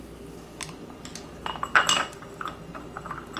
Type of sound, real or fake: real